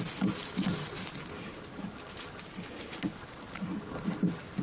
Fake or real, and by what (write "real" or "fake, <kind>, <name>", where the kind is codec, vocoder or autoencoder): real